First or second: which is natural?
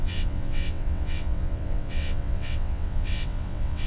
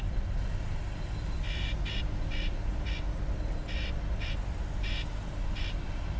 second